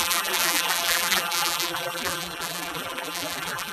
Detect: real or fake fake